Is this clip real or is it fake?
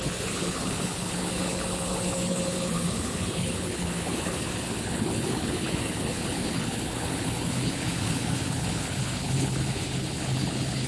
fake